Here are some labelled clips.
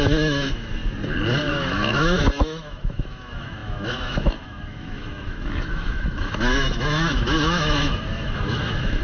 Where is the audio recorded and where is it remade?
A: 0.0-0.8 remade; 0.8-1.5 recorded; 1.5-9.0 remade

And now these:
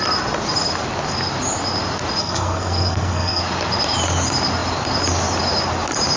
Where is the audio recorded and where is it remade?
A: 0.0-2.2 recorded; 2.2-3.4 remade; 3.4-6.2 recorded

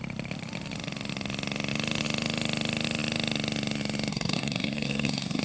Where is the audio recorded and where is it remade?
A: 0.0-4.1 recorded; 4.1-5.4 remade